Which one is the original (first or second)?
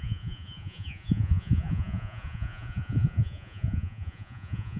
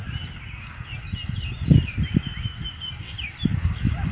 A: second